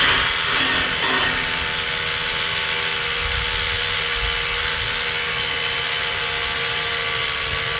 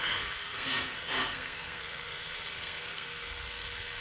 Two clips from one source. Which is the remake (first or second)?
second